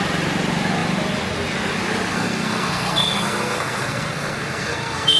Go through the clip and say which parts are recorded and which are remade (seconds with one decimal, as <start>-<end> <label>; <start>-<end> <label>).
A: 0.0-2.1 recorded; 2.1-5.2 remade